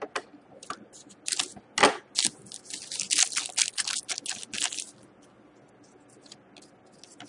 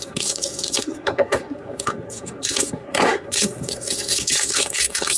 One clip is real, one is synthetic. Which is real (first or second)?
first